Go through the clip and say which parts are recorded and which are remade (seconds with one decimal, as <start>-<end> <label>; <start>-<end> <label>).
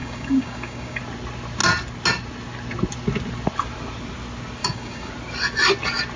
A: 0.0-1.0 remade; 1.0-4.6 recorded; 4.6-5.1 remade; 5.1-6.2 recorded